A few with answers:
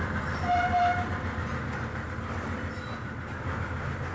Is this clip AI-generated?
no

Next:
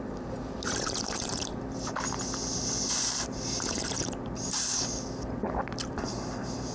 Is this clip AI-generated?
yes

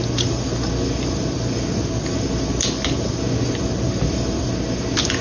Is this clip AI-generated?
no